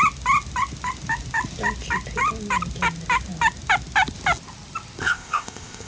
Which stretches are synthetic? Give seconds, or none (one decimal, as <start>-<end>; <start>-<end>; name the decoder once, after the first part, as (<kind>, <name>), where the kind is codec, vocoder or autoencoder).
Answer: 5.0-5.9 (codec, ZipCodec)